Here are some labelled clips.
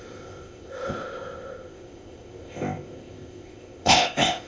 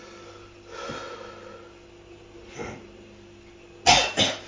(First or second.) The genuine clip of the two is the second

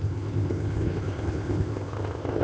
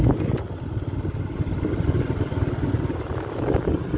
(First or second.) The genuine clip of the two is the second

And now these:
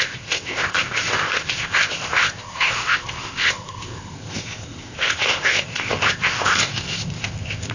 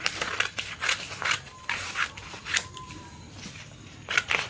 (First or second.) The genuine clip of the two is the second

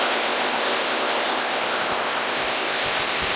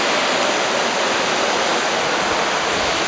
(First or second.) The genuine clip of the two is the second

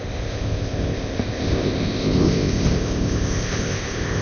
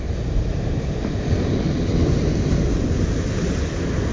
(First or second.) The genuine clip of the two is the second